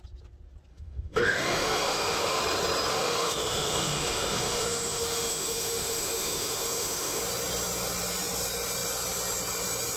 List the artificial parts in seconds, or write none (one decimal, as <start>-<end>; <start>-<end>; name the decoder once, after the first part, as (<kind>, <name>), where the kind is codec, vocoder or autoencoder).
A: 0.7-2.4 (autoencoder, DAC-VAE); 2.9-7.2